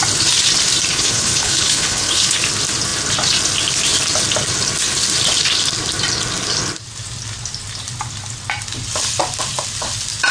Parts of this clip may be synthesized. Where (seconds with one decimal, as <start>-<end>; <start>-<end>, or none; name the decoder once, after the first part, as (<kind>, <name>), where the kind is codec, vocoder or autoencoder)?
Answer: 0.9-2.4 (codec, HILCodec)